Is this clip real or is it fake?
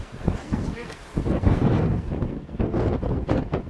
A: fake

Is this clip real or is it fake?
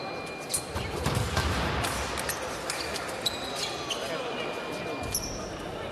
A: real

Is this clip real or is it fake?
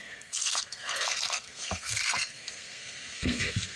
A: fake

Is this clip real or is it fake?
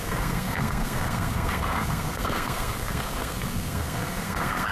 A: fake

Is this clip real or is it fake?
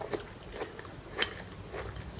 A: real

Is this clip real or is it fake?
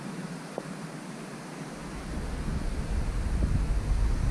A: real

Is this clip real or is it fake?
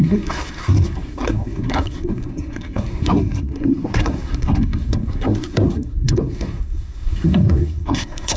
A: fake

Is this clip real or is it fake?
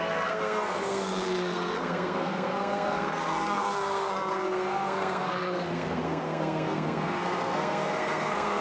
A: fake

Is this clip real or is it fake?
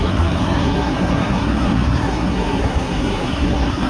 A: fake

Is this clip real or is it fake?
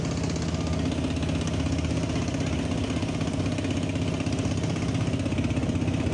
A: real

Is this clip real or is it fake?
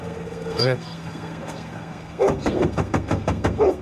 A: fake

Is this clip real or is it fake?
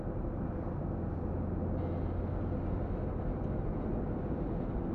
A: real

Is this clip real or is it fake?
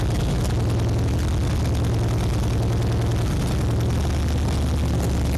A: real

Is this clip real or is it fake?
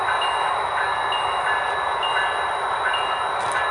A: real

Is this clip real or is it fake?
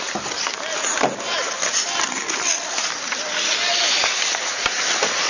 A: real